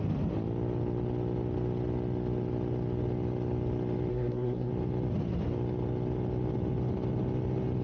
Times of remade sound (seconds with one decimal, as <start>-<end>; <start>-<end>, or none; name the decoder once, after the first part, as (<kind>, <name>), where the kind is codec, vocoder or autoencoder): 4.1-4.7 (codec, SNAC)

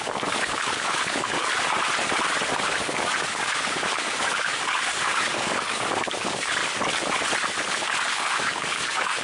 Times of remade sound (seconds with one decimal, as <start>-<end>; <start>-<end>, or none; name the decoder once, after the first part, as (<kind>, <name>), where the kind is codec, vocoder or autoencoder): 0.0-1.5 (codec, DAC); 2.6-6.6; 7.7-9.2

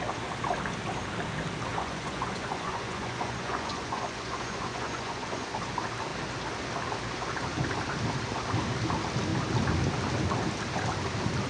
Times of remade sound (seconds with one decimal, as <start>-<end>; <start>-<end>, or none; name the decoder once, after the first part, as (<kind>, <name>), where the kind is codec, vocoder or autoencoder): 1.7-5.5 (vocoder, Vocos)